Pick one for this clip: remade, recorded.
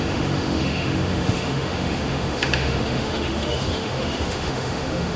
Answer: remade